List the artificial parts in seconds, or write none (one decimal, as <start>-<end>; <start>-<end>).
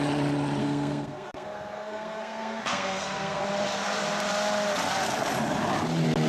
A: 0.6-3.4